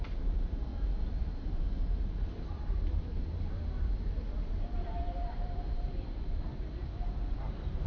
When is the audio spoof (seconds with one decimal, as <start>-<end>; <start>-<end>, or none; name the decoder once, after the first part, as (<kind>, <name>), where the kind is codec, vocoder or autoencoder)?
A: 0.0-0.7 (vocoder, BigVGAN v2); 1.2-7.9